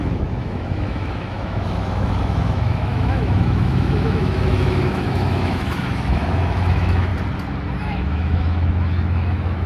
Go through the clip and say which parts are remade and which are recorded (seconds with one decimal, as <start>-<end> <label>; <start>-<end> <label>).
0.0-7.1 remade; 7.1-7.8 recorded; 7.8-9.7 remade

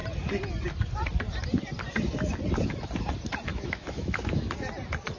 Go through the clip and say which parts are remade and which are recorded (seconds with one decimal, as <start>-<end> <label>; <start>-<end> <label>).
0.0-3.5 recorded; 3.5-4.5 remade; 4.5-5.2 recorded